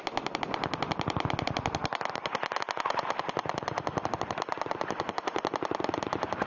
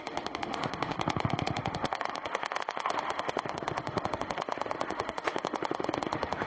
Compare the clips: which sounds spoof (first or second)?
second